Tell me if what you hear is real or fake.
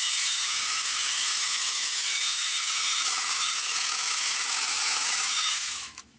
fake